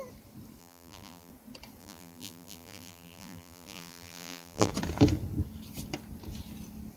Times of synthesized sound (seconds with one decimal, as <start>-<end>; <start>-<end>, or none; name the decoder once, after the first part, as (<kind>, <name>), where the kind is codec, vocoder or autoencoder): 0.6-1.3 (vocoder, BigVGAN v2); 1.8-4.7